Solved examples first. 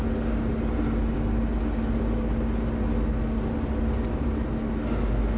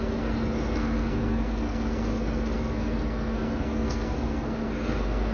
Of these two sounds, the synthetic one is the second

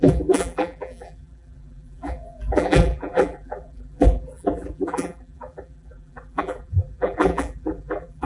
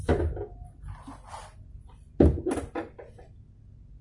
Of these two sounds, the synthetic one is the first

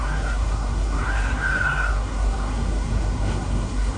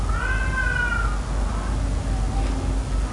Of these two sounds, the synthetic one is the first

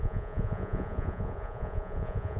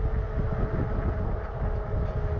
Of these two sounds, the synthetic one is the first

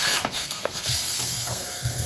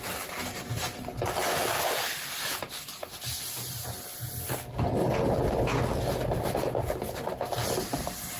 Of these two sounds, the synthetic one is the first